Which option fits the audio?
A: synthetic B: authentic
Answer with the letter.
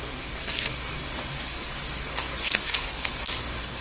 A